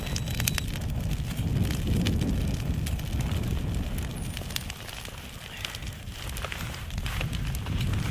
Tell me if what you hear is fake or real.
real